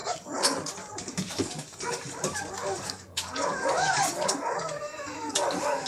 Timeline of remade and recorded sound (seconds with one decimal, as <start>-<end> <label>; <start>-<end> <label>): 0.0-5.9 remade